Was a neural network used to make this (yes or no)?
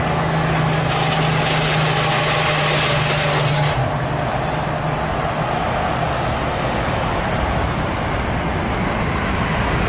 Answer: no